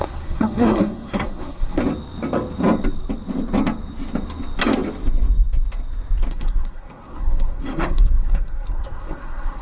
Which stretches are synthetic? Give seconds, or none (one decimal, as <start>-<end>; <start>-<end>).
0.0-1.8; 6.3-9.6